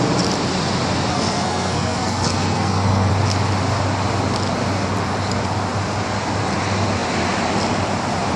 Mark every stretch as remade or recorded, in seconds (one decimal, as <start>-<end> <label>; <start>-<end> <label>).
0.0-1.1 recorded; 1.1-3.1 remade; 3.1-8.4 recorded